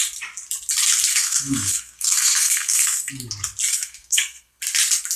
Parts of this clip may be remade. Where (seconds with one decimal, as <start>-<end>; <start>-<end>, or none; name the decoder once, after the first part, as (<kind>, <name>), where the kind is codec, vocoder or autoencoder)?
1.1-3.1 (codec, SNAC); 3.7-4.6

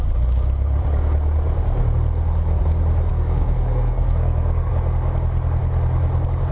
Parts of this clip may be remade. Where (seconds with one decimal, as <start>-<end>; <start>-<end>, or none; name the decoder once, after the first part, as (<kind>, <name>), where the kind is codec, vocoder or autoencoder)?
3.1-4.7 (codec, SNAC)